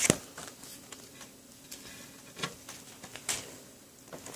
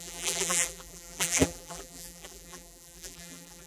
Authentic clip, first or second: first